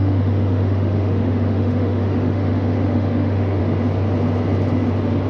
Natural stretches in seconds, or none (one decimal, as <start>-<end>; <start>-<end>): 3.6-5.3